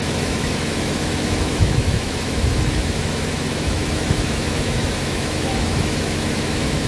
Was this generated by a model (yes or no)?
yes